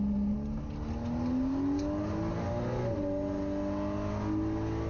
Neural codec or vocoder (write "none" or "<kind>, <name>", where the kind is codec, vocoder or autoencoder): none